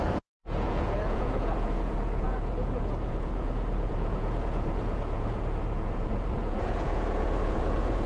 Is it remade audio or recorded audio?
remade